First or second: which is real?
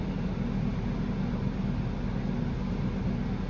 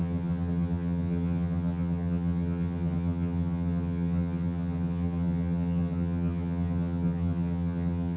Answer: first